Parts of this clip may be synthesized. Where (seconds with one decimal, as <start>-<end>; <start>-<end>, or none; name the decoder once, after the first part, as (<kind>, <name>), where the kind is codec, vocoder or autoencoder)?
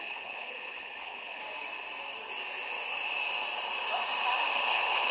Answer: 0.0-1.4 (codec, HILCodec); 4.5-5.1